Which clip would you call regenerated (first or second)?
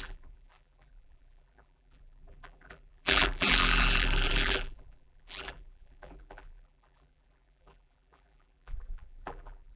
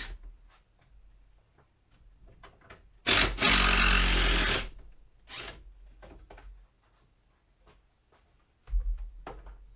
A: first